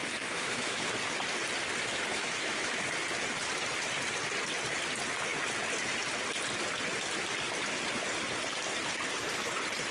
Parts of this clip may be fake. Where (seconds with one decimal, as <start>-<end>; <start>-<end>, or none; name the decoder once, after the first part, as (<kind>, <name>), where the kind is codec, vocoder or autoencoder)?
0.0-0.9 (autoencoder, DAC-VAE); 2.1-2.9